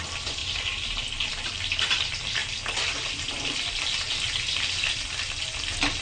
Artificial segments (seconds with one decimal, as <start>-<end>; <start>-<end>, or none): none